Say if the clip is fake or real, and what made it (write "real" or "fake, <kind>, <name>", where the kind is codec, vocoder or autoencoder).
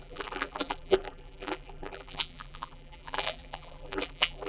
fake, vocoder, BigVGAN v2